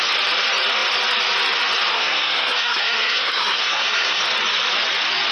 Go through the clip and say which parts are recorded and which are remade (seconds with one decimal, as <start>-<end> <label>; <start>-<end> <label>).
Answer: 0.0-1.9 recorded; 1.9-4.2 remade; 4.2-5.3 recorded